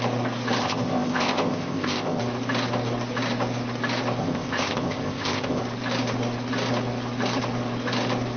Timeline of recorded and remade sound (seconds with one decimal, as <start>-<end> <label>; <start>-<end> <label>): 0.0-0.6 recorded; 0.6-2.2 remade; 2.2-4.2 recorded; 4.2-5.6 remade; 5.6-8.4 recorded